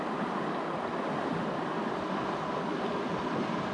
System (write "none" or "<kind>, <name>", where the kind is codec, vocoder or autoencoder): none